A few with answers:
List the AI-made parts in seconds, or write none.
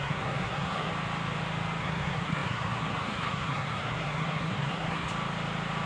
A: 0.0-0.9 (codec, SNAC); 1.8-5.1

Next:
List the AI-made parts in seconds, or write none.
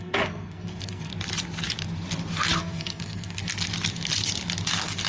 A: 0.0-1.1 (codec, SNAC); 2.6-3.4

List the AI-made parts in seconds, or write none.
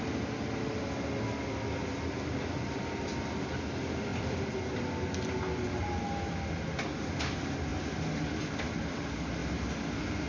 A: none